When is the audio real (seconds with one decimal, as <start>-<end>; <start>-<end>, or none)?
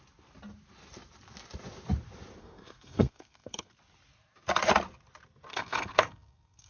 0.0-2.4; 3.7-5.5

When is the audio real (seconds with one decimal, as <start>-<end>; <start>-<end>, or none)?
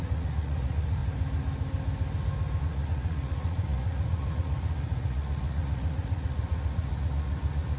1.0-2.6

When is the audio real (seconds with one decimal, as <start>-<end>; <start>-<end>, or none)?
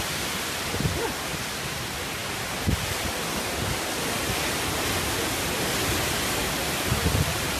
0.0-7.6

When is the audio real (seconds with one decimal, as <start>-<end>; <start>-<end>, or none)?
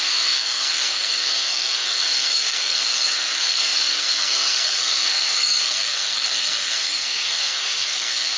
none